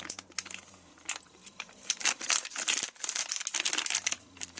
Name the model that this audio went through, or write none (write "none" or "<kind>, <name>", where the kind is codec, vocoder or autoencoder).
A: none